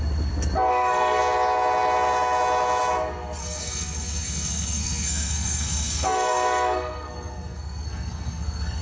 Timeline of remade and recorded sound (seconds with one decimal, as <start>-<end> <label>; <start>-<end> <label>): 0.0-0.7 recorded; 0.7-1.2 remade; 1.2-3.4 recorded; 3.4-8.8 remade